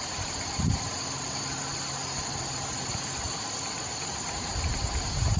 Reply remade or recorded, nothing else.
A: recorded